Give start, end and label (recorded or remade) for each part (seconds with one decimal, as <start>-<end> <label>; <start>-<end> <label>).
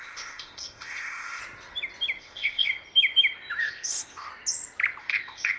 0.0-1.4 remade; 1.4-2.2 recorded; 2.2-2.7 remade; 2.7-3.6 recorded; 3.6-4.3 remade; 4.3-5.0 recorded; 5.0-5.6 remade